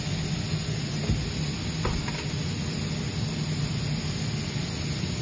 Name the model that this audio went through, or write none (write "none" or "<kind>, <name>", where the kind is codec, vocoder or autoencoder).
none